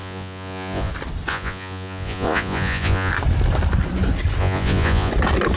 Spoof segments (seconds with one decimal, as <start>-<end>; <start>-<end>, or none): 0.0-0.9; 1.3-3.1; 4.4-5.1